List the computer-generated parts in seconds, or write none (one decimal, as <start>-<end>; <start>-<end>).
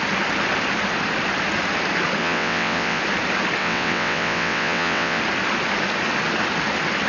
2.2-3.0; 3.6-5.2